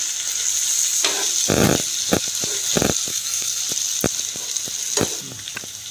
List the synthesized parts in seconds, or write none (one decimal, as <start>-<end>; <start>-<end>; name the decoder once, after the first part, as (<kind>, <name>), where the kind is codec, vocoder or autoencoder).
3.1-3.6 (codec, SNAC)